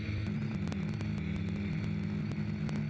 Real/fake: real